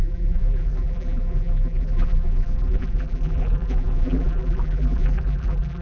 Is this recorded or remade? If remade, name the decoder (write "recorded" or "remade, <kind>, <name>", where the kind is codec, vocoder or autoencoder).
remade, vocoder, BigVGAN v2